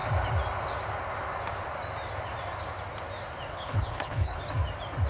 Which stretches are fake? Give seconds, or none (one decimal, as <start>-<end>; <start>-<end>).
3.5-4.4